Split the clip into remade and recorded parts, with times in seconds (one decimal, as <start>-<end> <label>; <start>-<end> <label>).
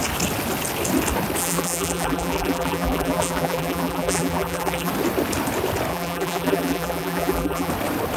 0.0-1.4 recorded; 1.4-4.9 remade; 4.9-5.9 recorded; 5.9-7.7 remade; 7.7-8.2 recorded